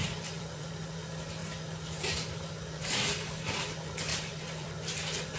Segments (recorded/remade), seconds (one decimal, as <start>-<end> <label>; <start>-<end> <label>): 0.0-0.7 remade; 0.7-4.1 recorded; 4.1-4.7 remade; 4.7-5.4 recorded